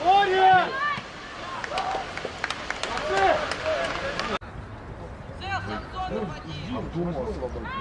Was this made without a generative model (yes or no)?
yes